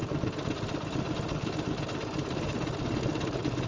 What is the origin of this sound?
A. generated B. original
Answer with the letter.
B